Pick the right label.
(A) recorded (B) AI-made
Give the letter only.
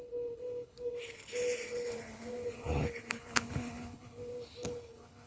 B